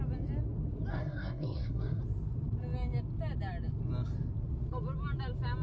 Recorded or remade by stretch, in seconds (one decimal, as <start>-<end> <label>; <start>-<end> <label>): 0.0-0.9 recorded; 0.9-2.0 remade; 2.0-5.6 recorded